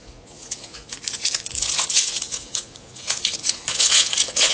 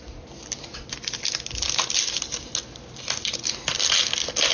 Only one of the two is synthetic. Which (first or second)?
first